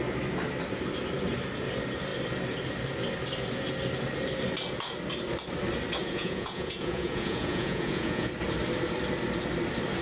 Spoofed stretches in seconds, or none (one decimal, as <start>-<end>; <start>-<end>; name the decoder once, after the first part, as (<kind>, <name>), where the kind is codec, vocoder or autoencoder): 6.0-8.3 (vocoder, Vocos)

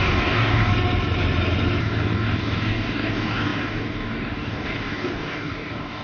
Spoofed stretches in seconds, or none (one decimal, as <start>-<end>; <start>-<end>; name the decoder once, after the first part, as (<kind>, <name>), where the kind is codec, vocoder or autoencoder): 0.0-0.7 (codec, DAC); 1.8-6.0

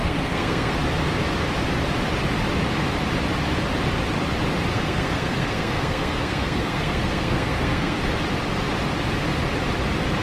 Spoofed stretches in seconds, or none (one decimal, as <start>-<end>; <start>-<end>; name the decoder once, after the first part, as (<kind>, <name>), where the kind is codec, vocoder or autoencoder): 0.0-0.7 (codec, SNAC); 4.7-8.0

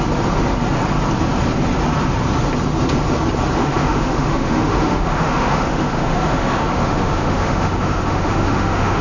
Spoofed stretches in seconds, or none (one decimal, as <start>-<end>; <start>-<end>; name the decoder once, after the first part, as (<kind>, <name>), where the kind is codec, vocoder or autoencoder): 3.6-9.0 (autoencoder, DAC-VAE)

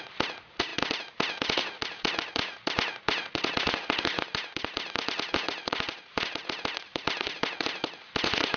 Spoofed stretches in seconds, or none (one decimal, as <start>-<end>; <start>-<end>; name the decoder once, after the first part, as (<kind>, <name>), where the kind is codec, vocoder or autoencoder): 0.0-8.6 (vocoder, Vocos)

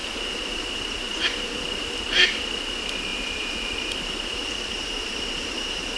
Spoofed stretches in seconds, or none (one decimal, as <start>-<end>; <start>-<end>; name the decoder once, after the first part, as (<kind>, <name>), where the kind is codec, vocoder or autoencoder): 0.0-0.6 (vocoder, BigVGAN v2); 1.1-1.9; 3.1-6.0

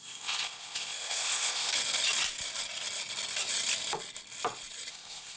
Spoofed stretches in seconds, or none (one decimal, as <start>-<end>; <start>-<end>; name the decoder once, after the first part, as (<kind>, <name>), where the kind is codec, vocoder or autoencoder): 0.0-1.7 (codec, ZipCodec); 4.9-5.4

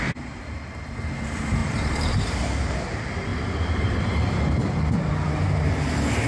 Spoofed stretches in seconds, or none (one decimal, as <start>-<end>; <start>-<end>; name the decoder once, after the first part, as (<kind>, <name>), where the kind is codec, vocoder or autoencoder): 1.6-2.6 (vocoder, BigVGAN v2); 3.3-5.1